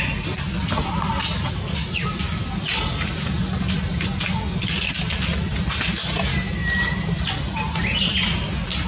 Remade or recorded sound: recorded